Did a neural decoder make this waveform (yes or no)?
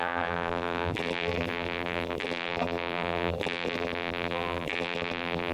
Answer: yes